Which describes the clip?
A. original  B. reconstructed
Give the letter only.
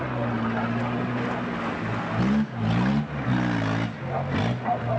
A